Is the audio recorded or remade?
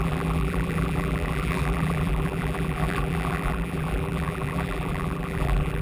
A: remade